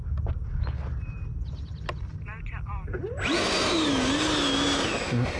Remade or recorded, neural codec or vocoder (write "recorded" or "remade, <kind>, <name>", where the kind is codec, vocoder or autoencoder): recorded